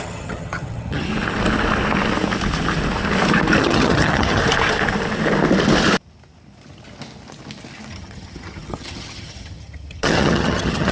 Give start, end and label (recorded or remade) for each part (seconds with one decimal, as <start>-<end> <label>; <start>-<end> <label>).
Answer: 0.0-1.1 remade; 1.1-3.6 recorded; 3.6-4.4 remade; 4.4-7.9 recorded; 7.9-10.9 remade